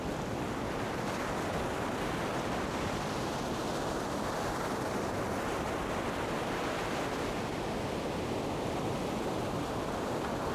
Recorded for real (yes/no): yes